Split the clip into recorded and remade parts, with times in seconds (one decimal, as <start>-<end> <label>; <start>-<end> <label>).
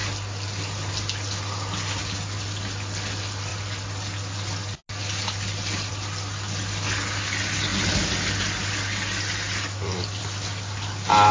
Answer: 0.0-11.3 recorded